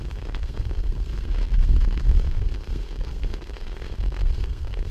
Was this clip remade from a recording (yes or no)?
yes